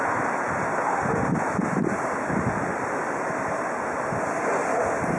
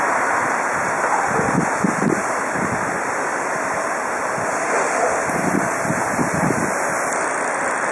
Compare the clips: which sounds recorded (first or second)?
first